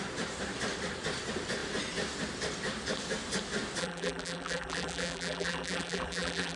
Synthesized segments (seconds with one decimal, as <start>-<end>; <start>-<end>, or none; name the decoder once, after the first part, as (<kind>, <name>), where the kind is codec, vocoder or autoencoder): 3.8-6.6 (vocoder, BigVGAN v2)